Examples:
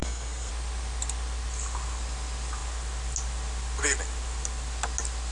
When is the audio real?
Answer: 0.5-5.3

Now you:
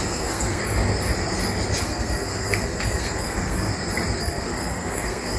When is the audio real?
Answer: 0.6-1.8; 3.7-4.2